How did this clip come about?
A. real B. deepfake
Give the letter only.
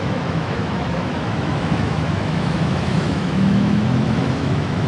B